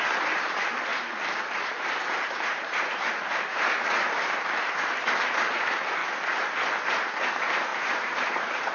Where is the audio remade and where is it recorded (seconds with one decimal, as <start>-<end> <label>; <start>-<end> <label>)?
0.0-6.0 remade; 6.0-7.3 recorded; 7.3-8.7 remade